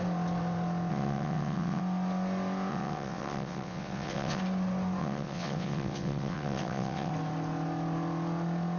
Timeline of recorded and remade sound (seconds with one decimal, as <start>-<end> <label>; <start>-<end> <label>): 0.0-0.9 recorded; 0.9-1.8 remade; 1.8-2.7 recorded; 2.7-4.4 remade; 4.4-5.0 recorded; 5.0-7.1 remade; 7.1-8.8 recorded